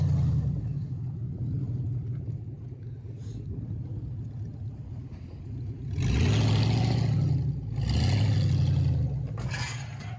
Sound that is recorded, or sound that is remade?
recorded